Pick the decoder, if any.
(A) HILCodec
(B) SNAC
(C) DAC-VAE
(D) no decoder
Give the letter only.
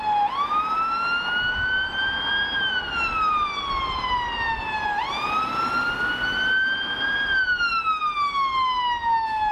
D